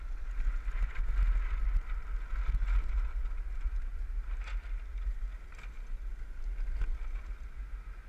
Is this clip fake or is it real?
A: real